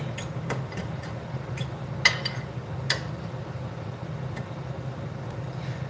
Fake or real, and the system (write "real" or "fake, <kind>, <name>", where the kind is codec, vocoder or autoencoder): real